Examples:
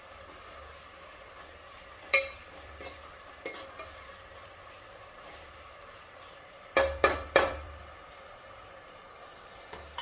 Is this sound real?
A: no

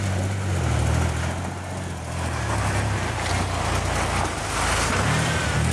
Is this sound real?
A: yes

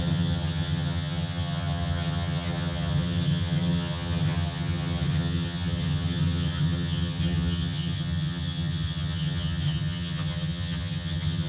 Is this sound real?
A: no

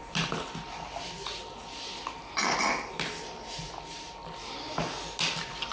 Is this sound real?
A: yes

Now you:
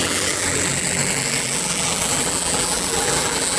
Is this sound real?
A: no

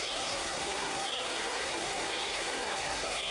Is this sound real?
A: no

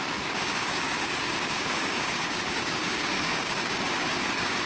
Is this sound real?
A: no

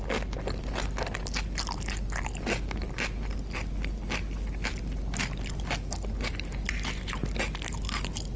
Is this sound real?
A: yes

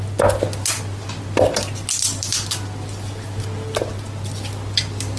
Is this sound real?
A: yes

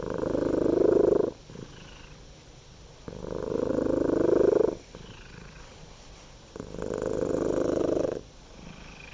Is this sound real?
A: yes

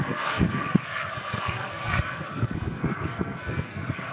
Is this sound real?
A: no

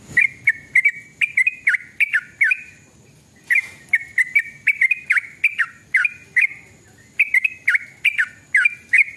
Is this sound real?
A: yes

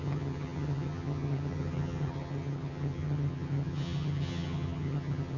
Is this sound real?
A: no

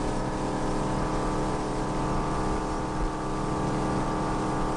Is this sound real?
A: yes